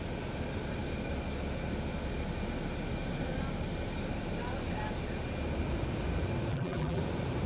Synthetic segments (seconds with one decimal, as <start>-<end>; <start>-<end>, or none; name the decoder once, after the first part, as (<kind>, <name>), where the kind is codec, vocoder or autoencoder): 6.5-7.0 (vocoder, BigVGAN v2)